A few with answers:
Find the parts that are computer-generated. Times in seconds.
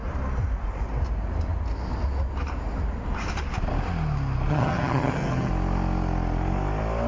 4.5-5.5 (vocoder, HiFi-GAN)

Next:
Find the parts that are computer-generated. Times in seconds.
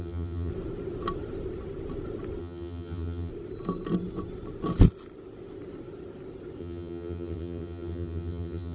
0.0-0.5 (vocoder, HiFi-GAN); 2.4-3.3; 6.6-8.7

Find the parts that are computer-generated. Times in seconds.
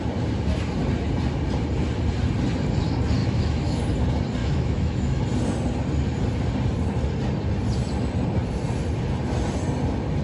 3.2-3.8 (autoencoder, DAC-VAE); 4.4-5.2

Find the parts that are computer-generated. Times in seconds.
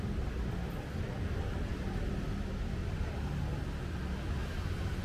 none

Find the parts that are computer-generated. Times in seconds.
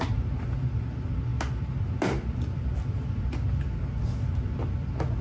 none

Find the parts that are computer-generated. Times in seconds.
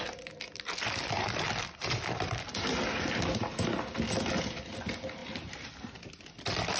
none